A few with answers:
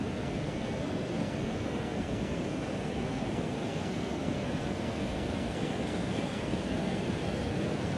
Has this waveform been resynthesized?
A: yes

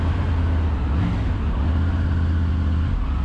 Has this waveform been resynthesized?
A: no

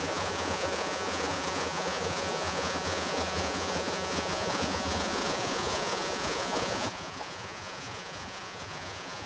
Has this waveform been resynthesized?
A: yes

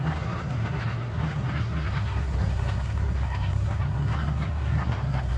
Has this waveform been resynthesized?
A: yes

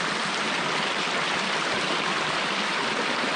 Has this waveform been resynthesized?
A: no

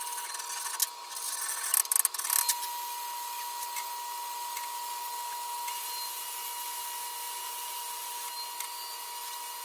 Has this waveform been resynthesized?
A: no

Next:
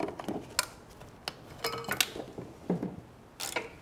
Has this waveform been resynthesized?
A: no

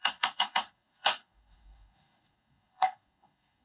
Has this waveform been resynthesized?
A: yes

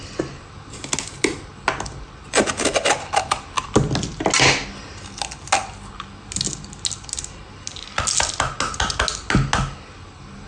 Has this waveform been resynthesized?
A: no